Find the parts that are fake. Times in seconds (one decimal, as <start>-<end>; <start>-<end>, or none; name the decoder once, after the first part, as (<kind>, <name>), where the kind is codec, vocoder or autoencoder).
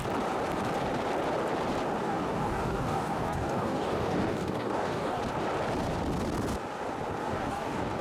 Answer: 2.0-5.2 (codec, DAC); 7.2-8.0